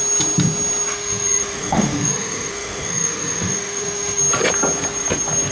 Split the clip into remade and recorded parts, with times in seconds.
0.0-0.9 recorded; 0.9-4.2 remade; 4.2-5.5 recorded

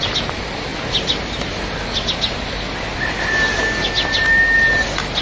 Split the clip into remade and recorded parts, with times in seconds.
0.0-5.2 recorded